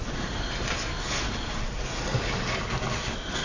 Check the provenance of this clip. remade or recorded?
recorded